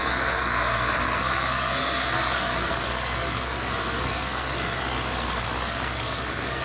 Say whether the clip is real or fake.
fake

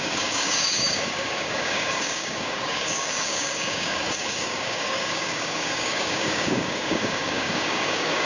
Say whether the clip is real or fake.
fake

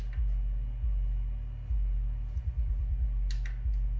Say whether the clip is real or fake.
real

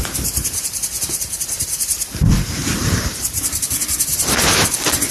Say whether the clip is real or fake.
fake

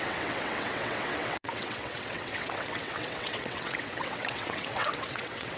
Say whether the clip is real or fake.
fake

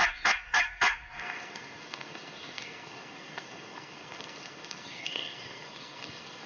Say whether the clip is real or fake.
fake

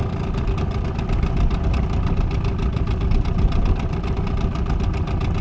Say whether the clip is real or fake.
real